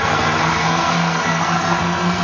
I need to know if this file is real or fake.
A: fake